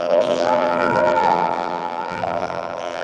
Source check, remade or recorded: remade